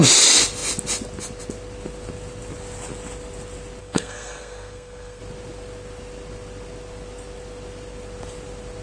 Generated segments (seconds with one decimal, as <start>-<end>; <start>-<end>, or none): 3.8-5.2